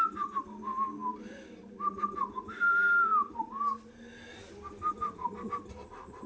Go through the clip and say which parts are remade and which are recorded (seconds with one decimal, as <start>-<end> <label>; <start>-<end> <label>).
0.0-1.0 recorded; 1.0-2.0 remade; 2.0-6.3 recorded